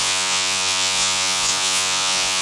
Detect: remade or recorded remade